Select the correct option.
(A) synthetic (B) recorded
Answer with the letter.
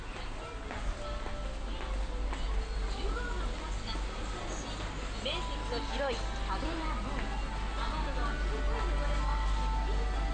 B